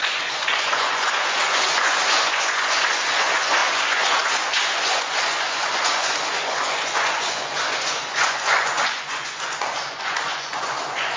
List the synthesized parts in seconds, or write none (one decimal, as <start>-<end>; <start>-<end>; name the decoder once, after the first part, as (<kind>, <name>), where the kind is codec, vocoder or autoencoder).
0.0-11.2 (vocoder, Vocos)